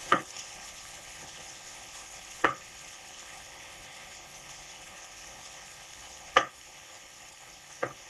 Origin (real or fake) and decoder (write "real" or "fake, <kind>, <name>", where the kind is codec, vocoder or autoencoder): fake, codec, HILCodec